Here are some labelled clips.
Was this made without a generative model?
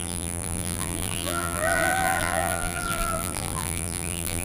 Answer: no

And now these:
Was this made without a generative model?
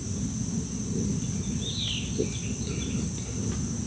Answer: yes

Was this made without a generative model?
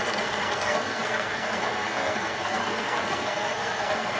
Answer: no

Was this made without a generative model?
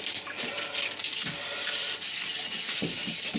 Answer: yes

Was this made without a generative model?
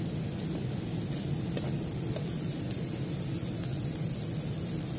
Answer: yes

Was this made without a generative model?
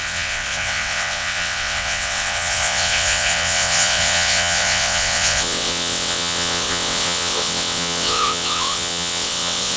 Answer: no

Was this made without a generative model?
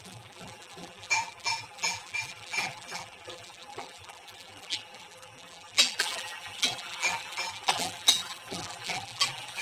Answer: no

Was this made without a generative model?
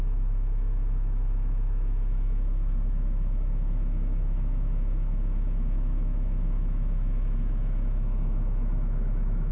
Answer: no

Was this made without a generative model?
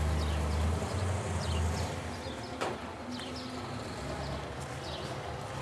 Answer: yes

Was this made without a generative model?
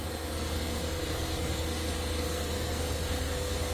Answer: no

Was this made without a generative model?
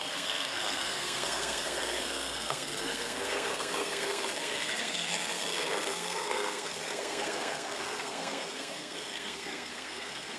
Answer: no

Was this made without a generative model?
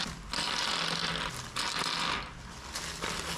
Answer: yes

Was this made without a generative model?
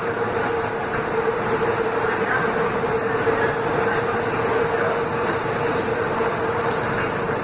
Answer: yes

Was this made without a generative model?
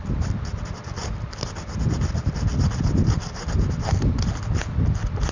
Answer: yes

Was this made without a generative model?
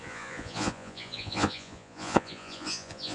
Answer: no